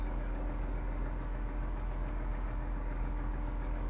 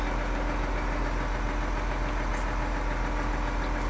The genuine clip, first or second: second